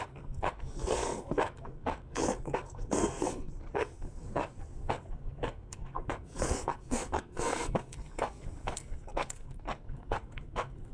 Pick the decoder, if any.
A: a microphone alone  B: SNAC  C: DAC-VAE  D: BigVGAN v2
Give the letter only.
B